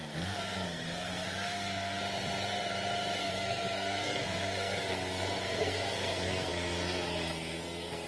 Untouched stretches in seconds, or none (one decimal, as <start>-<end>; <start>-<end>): 2.0-3.2